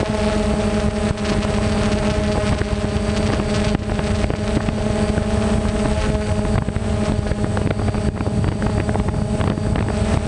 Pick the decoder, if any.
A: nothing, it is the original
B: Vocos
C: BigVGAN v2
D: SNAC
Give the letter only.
A